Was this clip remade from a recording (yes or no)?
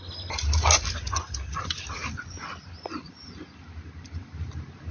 no